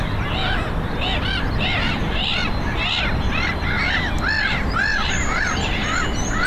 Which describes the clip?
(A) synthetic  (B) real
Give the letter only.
B